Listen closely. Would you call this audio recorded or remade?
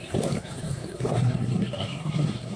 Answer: remade